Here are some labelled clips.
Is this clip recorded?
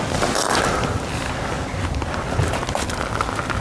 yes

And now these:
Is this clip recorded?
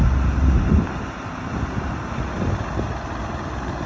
yes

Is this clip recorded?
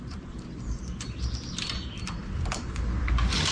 no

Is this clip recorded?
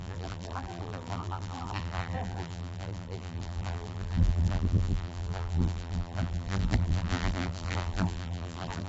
no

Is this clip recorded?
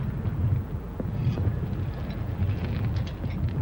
no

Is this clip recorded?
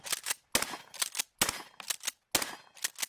yes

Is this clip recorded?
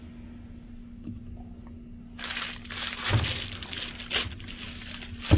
yes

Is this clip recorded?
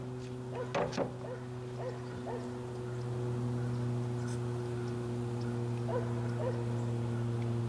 yes